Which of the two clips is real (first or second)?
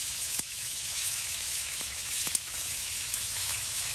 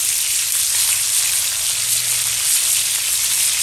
second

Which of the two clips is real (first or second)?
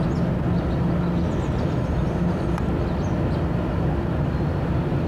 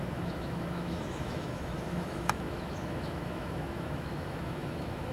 first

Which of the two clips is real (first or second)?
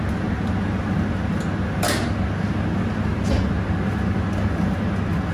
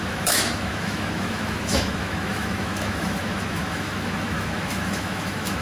first